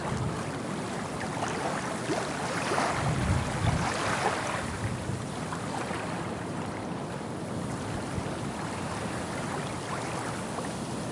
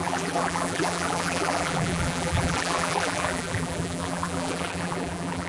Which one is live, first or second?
first